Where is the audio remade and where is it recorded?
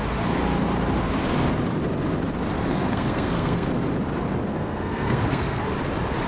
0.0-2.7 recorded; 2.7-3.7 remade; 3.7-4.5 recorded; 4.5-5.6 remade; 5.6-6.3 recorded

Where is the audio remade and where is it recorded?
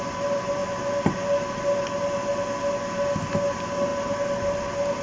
0.0-5.0 recorded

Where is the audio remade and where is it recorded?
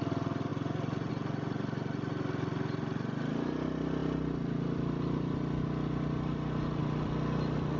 0.0-7.8 recorded